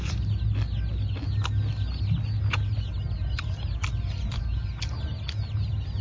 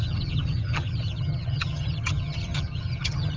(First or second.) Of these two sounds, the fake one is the second